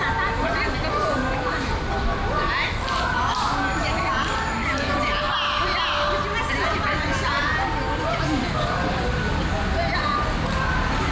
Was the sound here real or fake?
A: real